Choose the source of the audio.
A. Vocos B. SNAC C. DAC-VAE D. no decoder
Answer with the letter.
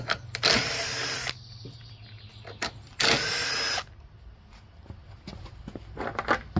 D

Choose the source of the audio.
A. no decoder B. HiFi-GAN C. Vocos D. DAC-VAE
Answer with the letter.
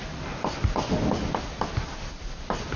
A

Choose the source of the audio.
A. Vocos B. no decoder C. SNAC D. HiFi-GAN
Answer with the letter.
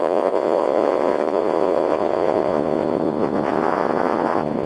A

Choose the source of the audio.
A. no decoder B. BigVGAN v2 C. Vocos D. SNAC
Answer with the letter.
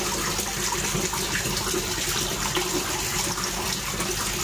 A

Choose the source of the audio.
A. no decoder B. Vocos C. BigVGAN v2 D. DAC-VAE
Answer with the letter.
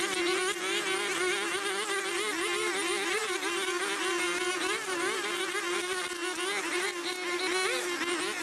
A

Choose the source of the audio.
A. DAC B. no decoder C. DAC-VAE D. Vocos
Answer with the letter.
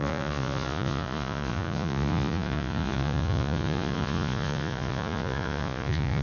D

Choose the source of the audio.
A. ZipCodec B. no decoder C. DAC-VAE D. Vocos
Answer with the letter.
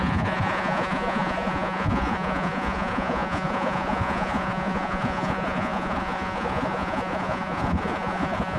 D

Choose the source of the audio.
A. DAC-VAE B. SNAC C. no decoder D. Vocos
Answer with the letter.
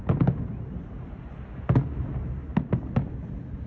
C